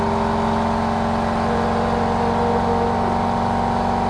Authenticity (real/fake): real